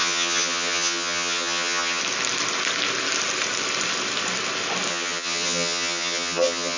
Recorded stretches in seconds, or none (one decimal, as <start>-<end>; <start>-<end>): 2.0-4.9